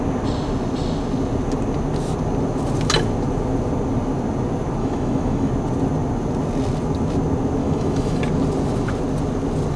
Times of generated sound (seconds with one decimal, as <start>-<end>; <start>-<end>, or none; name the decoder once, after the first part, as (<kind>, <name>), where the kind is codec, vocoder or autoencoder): 4.8-5.5 (autoencoder, DAC-VAE); 7.6-8.2